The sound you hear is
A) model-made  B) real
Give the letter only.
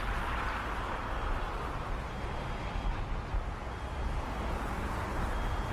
B